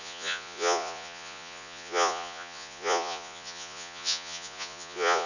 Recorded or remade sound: remade